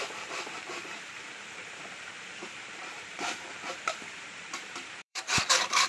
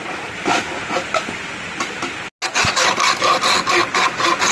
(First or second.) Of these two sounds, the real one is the second